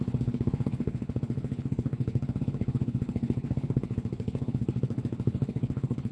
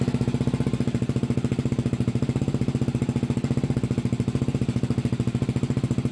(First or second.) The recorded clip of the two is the second